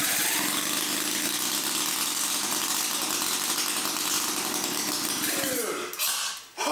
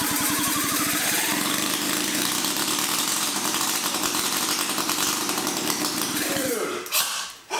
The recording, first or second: first